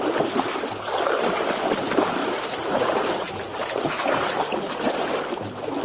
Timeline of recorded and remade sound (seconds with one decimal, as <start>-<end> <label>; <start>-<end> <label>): 0.0-2.2 recorded; 2.2-4.4 remade; 4.4-5.8 recorded